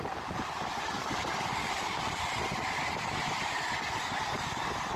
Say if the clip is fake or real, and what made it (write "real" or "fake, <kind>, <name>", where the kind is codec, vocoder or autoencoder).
real